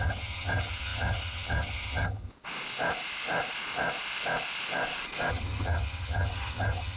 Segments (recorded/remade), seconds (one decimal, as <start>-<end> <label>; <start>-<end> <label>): 0.0-2.3 remade; 2.3-5.3 recorded; 5.3-7.0 remade